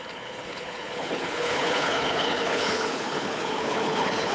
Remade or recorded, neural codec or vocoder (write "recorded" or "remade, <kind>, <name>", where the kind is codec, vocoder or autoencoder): remade, codec, HILCodec